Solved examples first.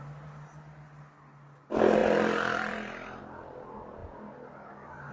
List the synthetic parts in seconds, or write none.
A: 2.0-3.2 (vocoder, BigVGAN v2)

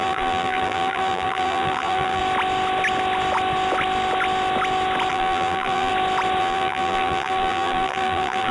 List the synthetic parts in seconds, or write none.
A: 0.0-2.2 (vocoder, BigVGAN v2); 5.1-5.9; 6.4-8.5

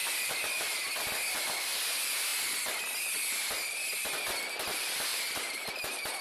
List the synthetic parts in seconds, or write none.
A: 5.1-5.7 (vocoder, BigVGAN v2)

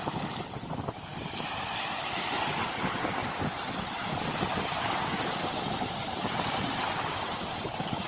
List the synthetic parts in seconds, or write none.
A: 1.1-2.5 (vocoder, BigVGAN v2); 3.2-4.7; 6.0-7.5